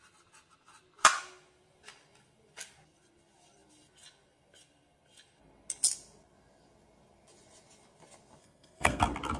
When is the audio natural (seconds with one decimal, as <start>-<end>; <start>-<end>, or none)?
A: 0.0-8.4; 9.0-9.4